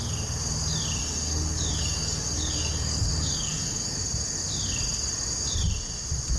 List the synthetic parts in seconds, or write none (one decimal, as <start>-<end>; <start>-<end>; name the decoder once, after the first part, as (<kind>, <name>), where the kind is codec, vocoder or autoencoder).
1.0-4.0 (codec, DAC)